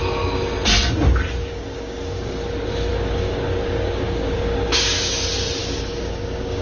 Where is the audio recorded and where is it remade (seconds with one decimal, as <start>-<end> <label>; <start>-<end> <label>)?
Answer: 0.0-1.4 recorded; 1.4-2.4 remade; 2.4-2.9 recorded; 2.9-5.1 remade; 5.1-5.6 recorded; 5.6-6.6 remade